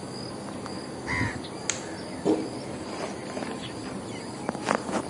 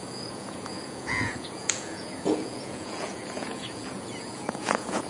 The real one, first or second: first